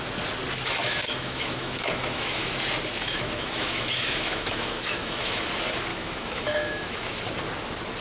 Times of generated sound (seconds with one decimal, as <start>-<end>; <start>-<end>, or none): 0.8-2.5; 3.0-5.4; 5.9-7.2